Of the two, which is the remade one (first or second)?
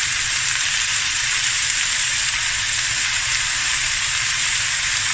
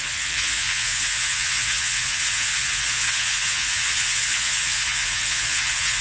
second